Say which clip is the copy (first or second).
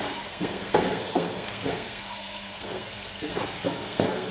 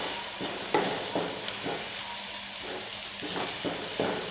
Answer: first